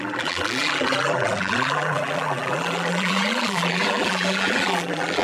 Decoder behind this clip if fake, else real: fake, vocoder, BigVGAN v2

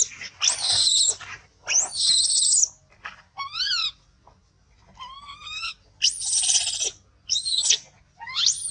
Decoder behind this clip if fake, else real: real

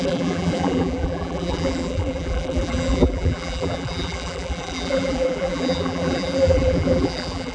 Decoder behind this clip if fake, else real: fake, vocoder, BigVGAN v2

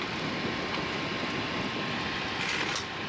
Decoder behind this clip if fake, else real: real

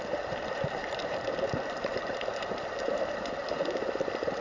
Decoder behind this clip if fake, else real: fake, vocoder, BigVGAN v2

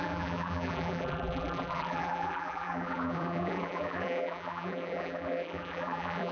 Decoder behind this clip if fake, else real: fake, vocoder, BigVGAN v2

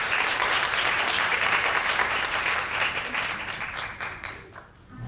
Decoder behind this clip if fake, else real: fake, vocoder, BigVGAN v2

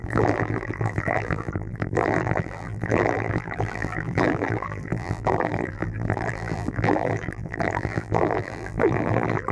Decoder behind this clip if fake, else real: fake, vocoder, BigVGAN v2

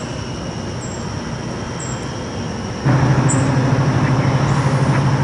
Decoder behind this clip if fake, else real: real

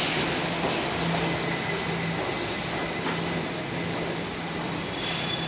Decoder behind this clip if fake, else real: real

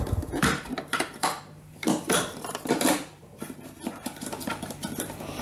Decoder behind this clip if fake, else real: fake, vocoder, BigVGAN v2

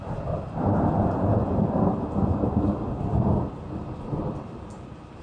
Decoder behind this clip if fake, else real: fake, vocoder, BigVGAN v2